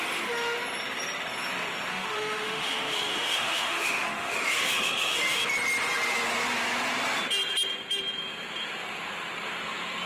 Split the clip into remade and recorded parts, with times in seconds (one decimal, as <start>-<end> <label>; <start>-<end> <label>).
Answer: 0.0-1.9 recorded; 1.9-5.4 remade; 5.4-10.1 recorded